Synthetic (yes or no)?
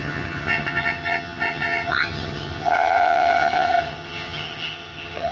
yes